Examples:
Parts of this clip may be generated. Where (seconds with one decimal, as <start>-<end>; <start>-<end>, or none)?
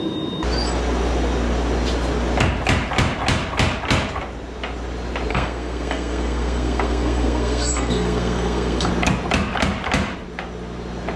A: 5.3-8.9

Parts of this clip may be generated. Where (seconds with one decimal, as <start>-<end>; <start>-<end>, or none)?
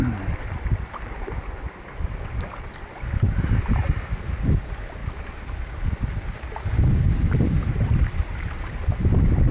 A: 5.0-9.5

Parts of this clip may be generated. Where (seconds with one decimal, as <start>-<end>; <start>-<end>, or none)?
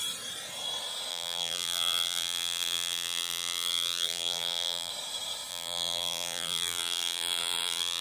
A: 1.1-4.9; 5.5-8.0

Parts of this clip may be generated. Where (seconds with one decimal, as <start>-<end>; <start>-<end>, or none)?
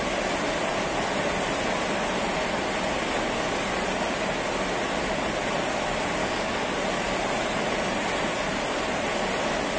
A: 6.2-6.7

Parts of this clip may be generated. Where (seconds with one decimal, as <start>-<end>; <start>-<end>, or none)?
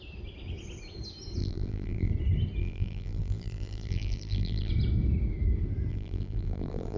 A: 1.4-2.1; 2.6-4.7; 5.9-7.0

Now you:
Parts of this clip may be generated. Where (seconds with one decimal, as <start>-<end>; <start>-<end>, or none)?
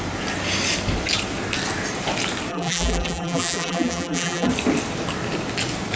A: 2.5-4.5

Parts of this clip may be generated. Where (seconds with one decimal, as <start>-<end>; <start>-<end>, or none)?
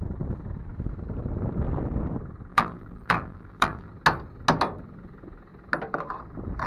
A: 2.5-3.9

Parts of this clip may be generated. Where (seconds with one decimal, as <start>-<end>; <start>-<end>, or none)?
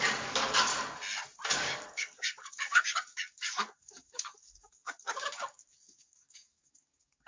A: 0.0-0.7; 1.5-7.3